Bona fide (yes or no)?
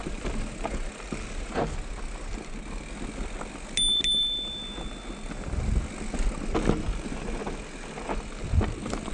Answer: yes